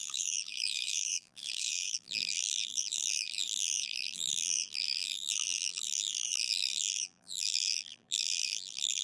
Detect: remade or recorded remade